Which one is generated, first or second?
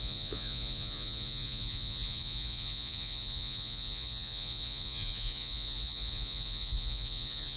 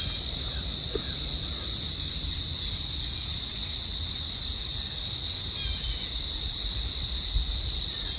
first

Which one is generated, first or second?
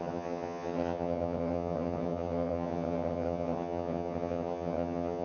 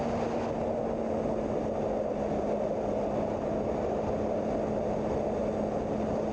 first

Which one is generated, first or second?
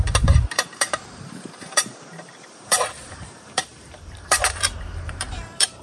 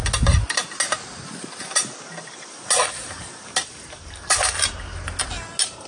first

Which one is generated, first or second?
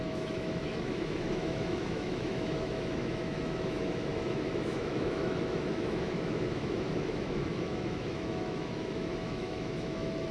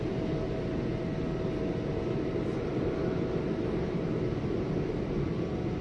first